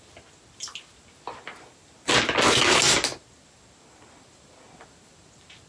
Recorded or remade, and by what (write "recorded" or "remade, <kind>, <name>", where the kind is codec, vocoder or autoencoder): recorded